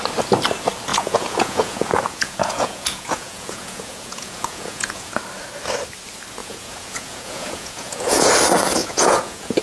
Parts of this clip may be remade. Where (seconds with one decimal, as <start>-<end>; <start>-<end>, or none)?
0.9-5.1; 6.4-8.3; 8.8-9.6